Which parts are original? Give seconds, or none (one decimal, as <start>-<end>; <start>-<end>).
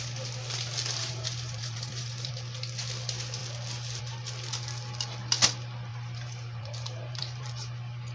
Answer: 0.0-1.0; 2.3-5.9; 7.5-8.1